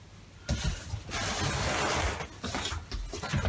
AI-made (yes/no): no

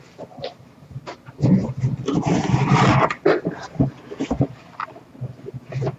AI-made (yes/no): no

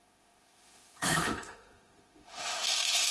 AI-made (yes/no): yes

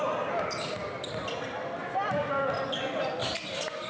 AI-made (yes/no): no